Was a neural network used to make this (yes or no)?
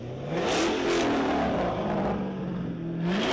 no